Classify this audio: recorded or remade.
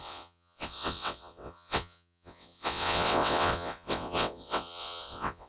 remade